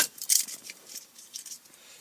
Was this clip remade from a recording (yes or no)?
yes